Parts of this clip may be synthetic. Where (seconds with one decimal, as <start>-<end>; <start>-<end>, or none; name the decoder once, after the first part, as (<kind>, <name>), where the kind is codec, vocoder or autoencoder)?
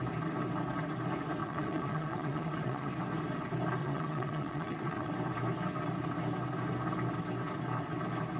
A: 1.4-2.9 (vocoder, Vocos); 3.8-5.1